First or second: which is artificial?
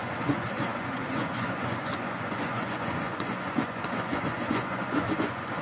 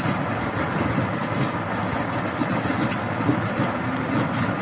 first